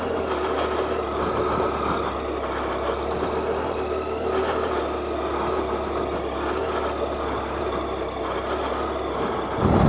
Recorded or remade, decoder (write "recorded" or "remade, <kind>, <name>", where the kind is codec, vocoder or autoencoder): recorded